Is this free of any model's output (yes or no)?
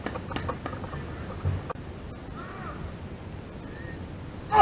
yes